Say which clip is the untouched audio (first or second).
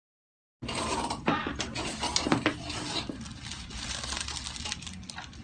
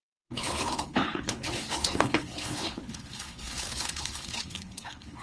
first